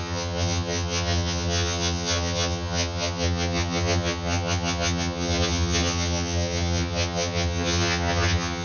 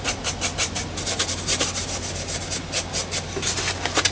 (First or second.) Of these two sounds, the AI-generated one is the first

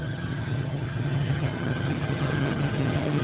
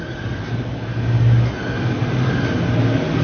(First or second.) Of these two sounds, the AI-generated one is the first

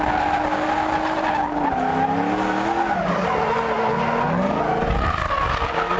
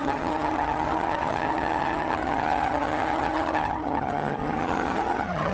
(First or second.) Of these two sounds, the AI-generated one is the second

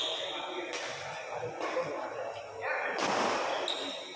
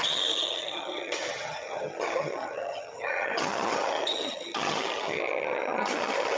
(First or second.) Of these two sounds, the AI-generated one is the second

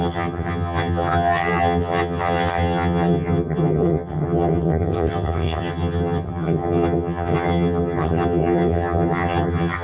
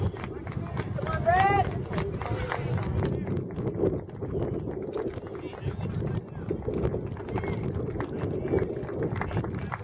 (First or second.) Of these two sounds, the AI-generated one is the first